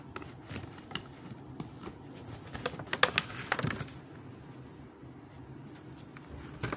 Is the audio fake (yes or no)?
no